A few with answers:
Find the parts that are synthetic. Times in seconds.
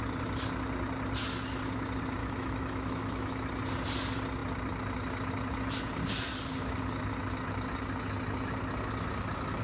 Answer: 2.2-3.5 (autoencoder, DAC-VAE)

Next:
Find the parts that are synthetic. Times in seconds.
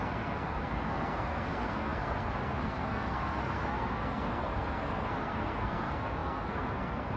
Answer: 0.0-7.2 (codec, SNAC)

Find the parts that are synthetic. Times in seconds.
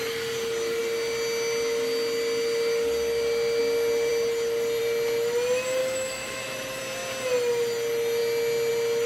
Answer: 5.8-6.8 (autoencoder, DAC-VAE)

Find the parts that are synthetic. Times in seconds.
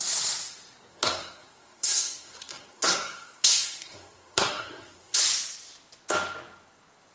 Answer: 0.9-5.2 (codec, SNAC)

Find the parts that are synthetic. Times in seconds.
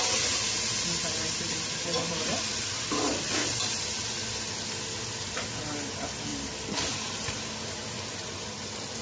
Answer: 2.5-3.3 (vocoder, BigVGAN v2); 6.3-7.4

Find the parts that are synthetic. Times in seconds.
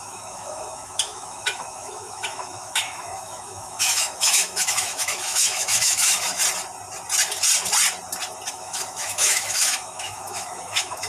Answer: 0.0-6.4 (autoencoder, DAC-VAE); 8.5-11.1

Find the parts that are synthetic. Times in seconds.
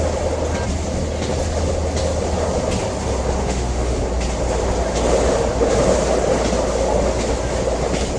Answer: 3.4-4.0 (autoencoder, DAC-VAE)